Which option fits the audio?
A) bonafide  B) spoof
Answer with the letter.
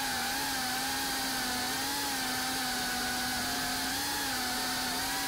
A